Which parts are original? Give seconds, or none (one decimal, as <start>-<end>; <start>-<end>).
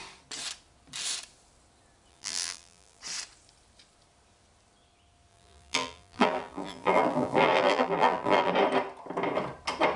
0.0-2.1; 3.0-5.3; 8.5-10.0